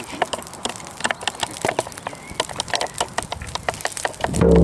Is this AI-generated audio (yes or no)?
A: no